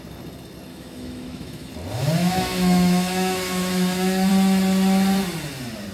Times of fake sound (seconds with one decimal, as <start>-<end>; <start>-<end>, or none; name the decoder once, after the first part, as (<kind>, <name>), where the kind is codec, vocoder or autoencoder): 0.7-1.7 (autoencoder, DAC-VAE); 2.2-4.3